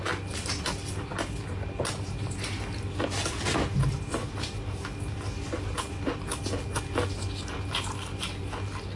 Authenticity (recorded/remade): recorded